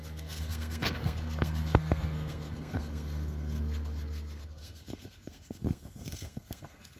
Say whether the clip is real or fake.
fake